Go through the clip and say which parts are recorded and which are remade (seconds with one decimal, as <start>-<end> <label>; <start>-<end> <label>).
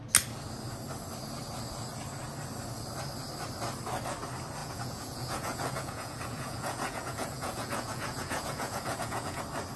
0.0-4.6 recorded; 4.6-9.4 remade; 9.4-9.8 recorded